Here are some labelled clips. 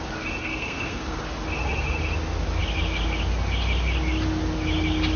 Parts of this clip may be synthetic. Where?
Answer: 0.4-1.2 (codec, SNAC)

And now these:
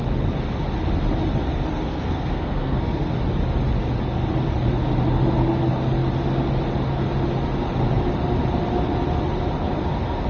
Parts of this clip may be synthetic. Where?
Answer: 1.9-3.1 (codec, SNAC)

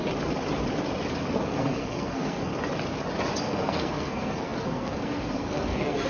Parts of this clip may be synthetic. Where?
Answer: 1.4-2.5 (codec, SNAC); 3.4-6.1

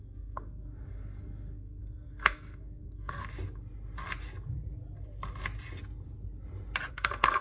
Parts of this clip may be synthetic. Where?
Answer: 0.0-3.2 (codec, SNAC); 6.9-7.4

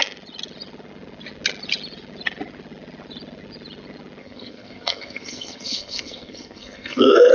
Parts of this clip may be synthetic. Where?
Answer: 4.2-7.3 (codec, SNAC)